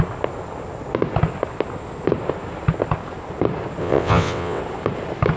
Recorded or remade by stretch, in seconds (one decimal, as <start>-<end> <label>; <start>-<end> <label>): 0.0-3.8 recorded; 3.8-4.6 remade; 4.6-5.4 recorded